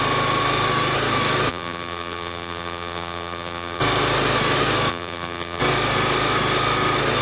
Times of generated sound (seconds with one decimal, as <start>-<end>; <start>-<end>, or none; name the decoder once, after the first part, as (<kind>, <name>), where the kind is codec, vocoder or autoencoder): 1.5-3.8 (vocoder, BigVGAN v2); 4.9-5.6